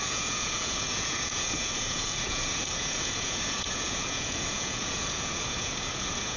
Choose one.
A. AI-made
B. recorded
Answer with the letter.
A